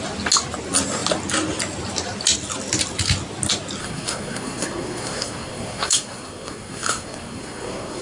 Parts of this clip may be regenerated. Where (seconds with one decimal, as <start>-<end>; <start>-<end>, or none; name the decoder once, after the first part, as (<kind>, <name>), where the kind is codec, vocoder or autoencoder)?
3.8-8.0 (codec, SNAC)